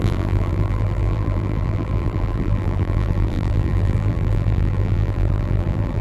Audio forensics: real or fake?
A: fake